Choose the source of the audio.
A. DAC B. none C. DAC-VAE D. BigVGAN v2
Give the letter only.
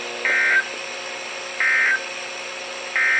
B